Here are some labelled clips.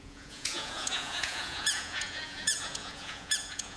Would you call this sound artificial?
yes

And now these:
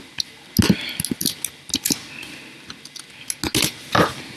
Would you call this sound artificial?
no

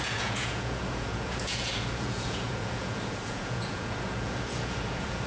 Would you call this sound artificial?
yes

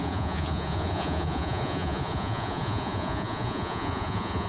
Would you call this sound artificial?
yes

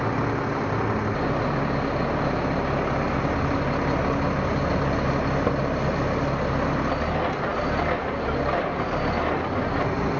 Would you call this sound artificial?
no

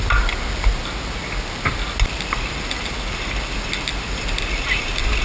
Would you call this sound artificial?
no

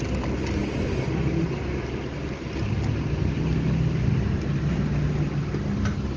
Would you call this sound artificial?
no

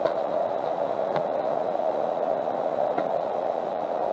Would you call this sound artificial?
yes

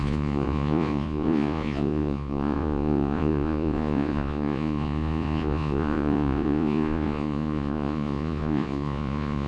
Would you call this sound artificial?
yes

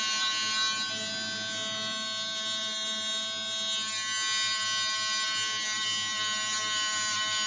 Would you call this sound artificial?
no